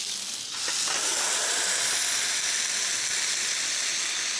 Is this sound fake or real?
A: real